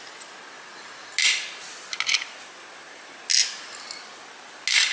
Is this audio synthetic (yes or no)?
no